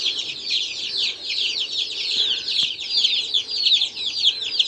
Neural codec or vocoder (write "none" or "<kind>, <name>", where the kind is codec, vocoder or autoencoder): none